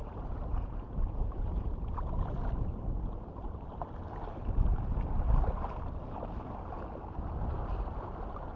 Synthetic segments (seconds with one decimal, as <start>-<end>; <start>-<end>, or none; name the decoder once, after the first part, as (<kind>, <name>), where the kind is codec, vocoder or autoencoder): 0.5-2.1 (vocoder, Vocos)